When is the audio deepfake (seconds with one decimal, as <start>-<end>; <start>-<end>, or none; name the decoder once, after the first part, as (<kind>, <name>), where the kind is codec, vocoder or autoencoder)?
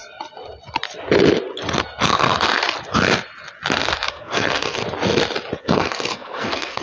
4.1-4.8 (codec, SNAC); 5.6-6.8